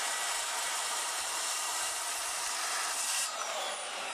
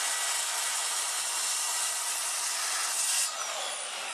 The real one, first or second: second